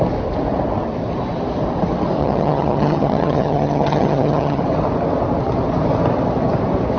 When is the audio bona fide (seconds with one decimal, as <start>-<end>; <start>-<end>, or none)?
0.0-2.2; 4.6-7.0